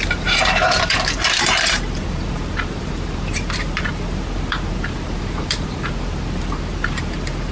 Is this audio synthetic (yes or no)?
yes